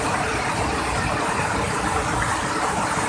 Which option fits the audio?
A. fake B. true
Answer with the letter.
B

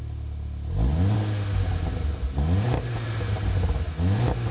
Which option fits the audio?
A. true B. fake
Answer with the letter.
A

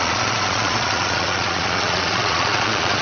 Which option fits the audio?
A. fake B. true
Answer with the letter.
A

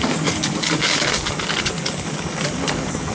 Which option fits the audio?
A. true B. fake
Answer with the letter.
B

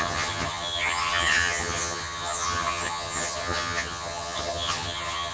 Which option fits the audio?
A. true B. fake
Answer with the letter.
B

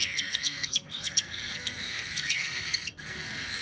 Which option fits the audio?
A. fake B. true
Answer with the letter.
A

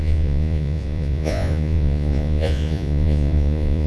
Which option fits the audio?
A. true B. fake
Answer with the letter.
B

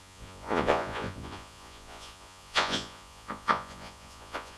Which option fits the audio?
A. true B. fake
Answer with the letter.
B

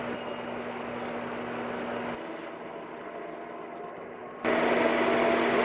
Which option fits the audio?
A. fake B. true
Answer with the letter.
B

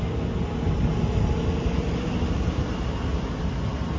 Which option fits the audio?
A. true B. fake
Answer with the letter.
A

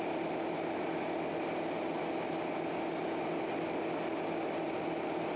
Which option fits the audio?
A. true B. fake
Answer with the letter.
A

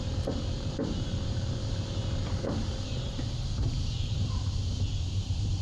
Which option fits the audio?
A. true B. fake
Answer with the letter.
B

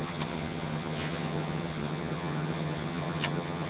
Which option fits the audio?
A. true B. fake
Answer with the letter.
B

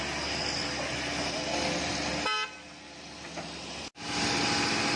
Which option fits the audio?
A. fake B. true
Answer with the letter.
B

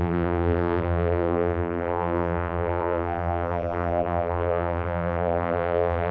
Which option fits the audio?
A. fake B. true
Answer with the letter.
A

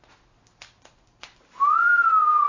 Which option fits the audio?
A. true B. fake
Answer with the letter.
A